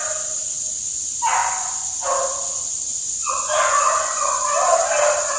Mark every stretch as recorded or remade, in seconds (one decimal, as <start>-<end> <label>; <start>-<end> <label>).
0.0-1.4 recorded; 1.4-4.4 remade; 4.4-5.4 recorded

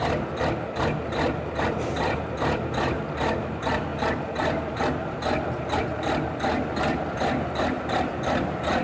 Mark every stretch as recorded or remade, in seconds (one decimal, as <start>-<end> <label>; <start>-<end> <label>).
0.0-8.8 recorded

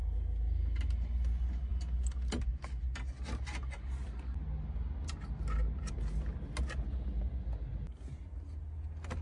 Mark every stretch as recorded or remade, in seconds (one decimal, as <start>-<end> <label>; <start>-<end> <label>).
0.0-9.2 recorded

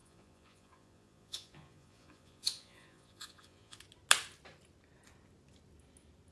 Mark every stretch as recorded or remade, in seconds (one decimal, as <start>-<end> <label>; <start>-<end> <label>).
0.0-3.8 remade; 3.8-6.3 recorded